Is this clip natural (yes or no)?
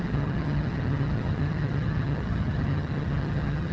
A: no